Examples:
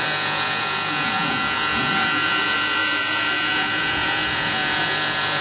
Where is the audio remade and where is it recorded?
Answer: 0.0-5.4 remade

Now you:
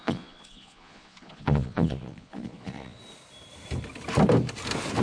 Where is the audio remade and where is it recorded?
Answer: 0.0-3.0 remade; 3.0-5.0 recorded

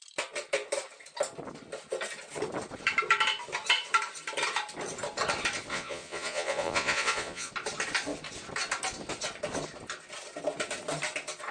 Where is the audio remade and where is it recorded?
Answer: 0.0-5.7 recorded; 5.7-7.5 remade; 7.5-11.5 recorded

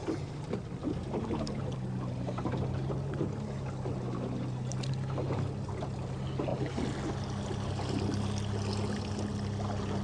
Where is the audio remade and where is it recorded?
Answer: 0.0-10.0 recorded

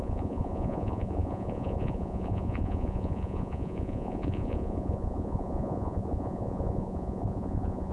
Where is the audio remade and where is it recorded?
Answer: 0.0-7.9 remade

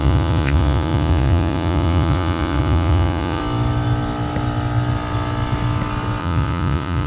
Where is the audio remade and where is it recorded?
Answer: 0.0-3.4 remade; 3.4-6.2 recorded; 6.2-7.1 remade

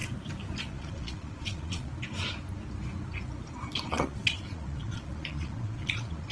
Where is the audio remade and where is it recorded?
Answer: 0.0-0.6 recorded; 0.6-1.9 remade; 1.9-3.9 recorded; 3.9-6.3 remade